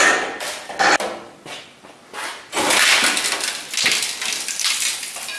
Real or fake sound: real